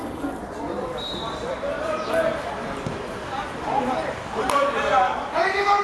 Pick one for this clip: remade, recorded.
remade